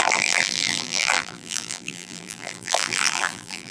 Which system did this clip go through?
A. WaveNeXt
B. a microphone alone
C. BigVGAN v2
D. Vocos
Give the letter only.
C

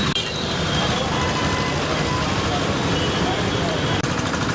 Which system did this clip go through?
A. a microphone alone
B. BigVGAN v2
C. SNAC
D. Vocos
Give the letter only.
B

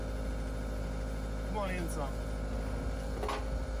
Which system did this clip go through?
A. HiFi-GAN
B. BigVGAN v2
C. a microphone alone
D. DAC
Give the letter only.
C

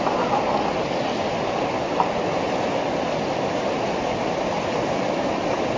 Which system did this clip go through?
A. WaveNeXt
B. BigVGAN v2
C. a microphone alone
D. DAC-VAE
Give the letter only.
C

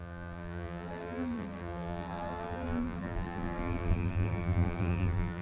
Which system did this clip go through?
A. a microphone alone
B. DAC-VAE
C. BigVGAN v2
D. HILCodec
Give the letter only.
C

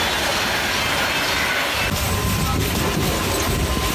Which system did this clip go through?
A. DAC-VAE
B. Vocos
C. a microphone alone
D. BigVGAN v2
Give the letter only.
C